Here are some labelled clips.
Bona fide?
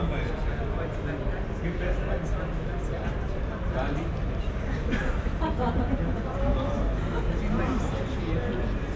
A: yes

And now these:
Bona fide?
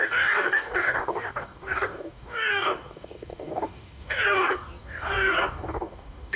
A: no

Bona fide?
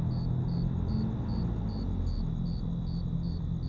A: yes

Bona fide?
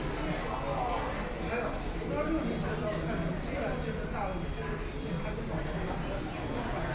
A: yes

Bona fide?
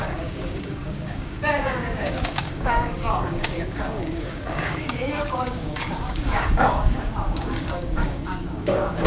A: no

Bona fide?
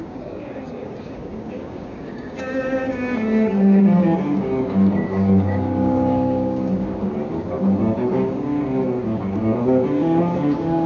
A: no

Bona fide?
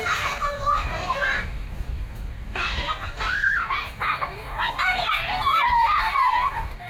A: no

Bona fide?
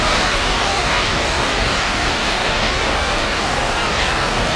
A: no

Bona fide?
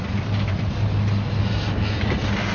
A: yes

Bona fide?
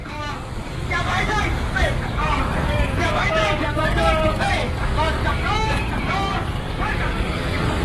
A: no